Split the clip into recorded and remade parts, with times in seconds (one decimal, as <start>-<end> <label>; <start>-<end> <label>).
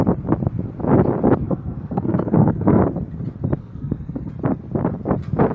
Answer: 0.0-1.4 recorded; 1.4-2.8 remade; 2.8-3.6 recorded; 3.6-4.3 remade; 4.3-5.5 recorded